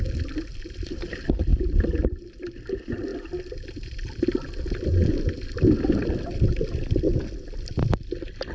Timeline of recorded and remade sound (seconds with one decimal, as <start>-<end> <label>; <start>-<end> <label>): 0.0-3.1 remade; 3.1-5.9 recorded; 5.9-8.5 remade